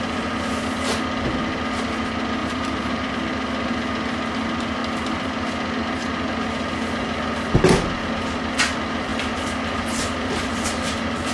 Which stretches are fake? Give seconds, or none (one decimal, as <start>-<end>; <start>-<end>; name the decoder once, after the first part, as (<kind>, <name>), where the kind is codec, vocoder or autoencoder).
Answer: 2.4-3.1 (vocoder, BigVGAN v2)